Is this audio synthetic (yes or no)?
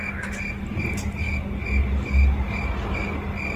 no